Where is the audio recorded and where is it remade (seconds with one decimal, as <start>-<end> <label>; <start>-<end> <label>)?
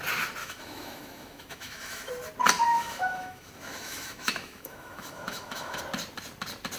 0.0-0.4 recorded; 0.4-2.1 remade; 2.1-2.7 recorded; 2.7-5.8 remade; 5.8-6.8 recorded